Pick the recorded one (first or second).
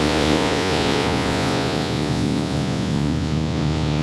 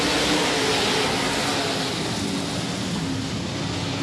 second